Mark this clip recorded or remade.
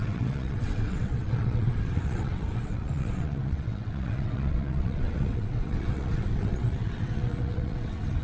remade